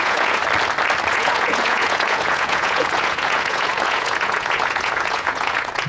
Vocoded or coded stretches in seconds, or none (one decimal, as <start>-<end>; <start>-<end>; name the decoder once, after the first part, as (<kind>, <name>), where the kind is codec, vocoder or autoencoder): 0.0-0.4 (vocoder, Vocos); 1.1-5.9